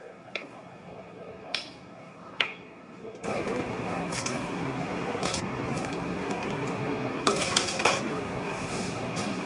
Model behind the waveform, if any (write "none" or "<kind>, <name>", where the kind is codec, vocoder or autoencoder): codec, SNAC